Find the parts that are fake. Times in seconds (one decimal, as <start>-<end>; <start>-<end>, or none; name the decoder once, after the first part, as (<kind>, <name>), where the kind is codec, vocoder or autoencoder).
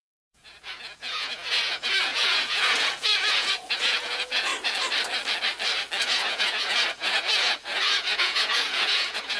0.0-4.5 (vocoder, Vocos); 6.0-9.4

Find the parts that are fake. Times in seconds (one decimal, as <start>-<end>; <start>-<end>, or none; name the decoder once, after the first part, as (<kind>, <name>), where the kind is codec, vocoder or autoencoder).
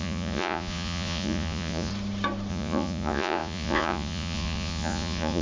0.0-1.9 (vocoder, Vocos); 2.5-5.4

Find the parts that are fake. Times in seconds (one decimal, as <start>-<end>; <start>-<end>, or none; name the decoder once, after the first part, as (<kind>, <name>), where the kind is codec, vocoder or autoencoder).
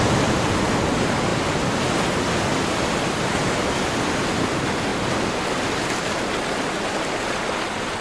none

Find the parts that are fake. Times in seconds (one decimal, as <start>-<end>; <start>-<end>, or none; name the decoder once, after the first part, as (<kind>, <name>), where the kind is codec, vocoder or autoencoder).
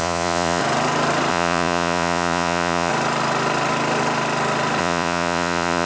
0.0-0.6 (vocoder, Vocos); 1.3-2.9; 4.8-5.9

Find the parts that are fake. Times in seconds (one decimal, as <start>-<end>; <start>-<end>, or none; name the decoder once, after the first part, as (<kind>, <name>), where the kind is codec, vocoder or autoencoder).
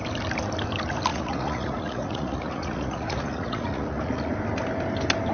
1.1-4.3 (vocoder, Vocos)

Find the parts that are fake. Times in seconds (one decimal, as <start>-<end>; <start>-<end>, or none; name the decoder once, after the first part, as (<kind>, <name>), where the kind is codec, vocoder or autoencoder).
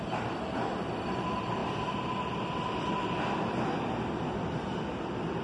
none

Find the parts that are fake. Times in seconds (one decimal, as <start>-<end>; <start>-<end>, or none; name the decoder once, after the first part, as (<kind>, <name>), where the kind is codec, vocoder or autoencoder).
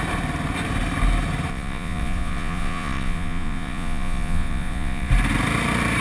1.5-5.1 (vocoder, Vocos)